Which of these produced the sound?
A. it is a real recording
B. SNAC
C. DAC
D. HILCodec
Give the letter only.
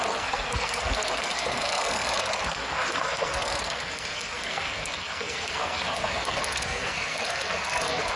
B